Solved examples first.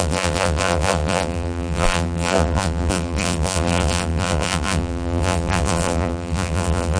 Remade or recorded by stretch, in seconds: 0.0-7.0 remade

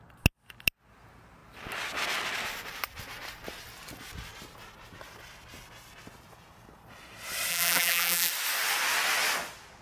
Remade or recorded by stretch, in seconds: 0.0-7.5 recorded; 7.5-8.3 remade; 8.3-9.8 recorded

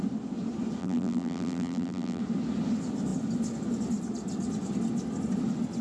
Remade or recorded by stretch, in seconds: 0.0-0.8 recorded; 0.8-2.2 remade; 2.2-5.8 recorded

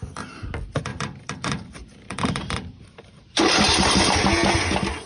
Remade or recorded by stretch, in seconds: 0.0-0.9 recorded; 0.9-4.0 remade; 4.0-5.1 recorded

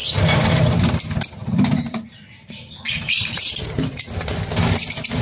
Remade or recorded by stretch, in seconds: 0.0-0.8 remade; 0.8-1.4 recorded; 1.4-4.5 remade; 4.5-5.2 recorded

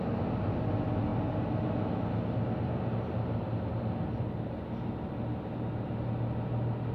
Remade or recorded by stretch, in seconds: 0.0-6.9 recorded

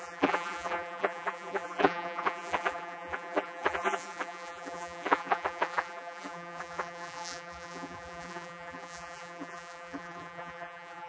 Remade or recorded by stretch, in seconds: 0.0-11.1 remade